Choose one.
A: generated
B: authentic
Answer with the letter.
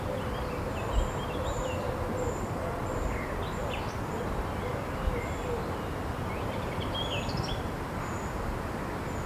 B